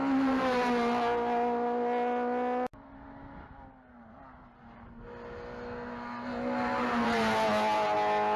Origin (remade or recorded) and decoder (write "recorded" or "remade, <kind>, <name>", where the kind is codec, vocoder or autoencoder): recorded